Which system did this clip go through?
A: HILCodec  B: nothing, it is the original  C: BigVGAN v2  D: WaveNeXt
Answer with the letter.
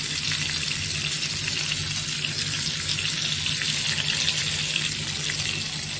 B